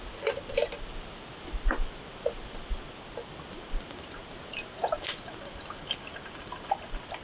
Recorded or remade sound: recorded